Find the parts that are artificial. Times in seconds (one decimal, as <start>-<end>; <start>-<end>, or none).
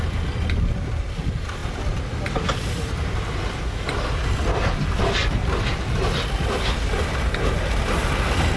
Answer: none